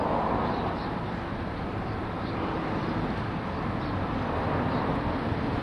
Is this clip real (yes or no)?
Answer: yes